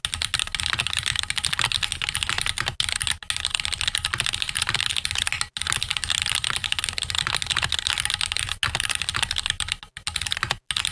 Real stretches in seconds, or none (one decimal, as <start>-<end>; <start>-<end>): 0.0-10.9